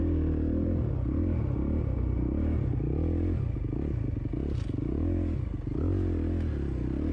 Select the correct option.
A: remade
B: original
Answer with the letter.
B